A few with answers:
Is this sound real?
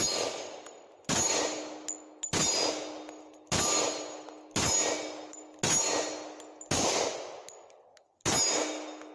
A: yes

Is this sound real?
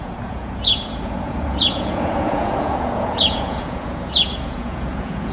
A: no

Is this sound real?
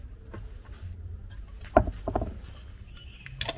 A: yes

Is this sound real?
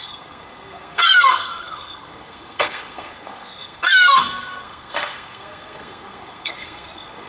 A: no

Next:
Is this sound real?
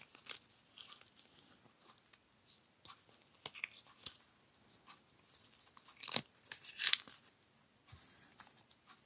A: yes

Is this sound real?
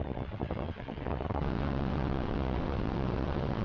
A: no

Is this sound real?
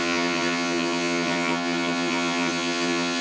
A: no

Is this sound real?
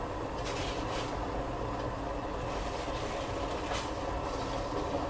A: yes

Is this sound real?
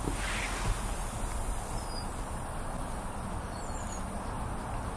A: yes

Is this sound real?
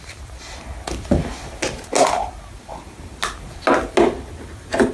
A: yes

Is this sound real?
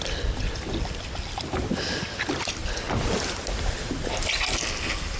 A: yes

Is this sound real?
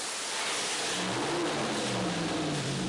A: no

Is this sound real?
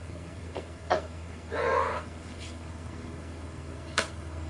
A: no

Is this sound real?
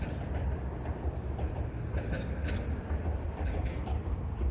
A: no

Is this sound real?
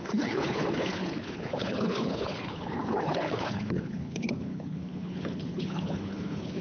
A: no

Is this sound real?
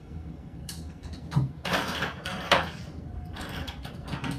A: no